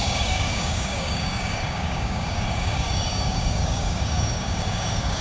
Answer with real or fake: fake